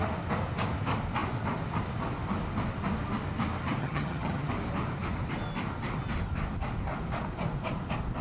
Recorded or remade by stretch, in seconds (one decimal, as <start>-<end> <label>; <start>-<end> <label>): 0.0-3.8 recorded; 3.8-4.5 remade; 4.5-8.2 recorded